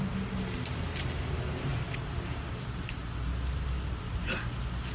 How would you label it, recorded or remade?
recorded